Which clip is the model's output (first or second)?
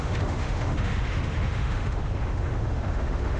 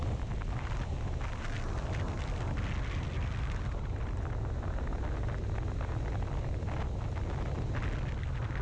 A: first